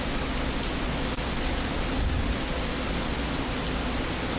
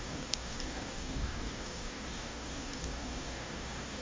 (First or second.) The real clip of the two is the first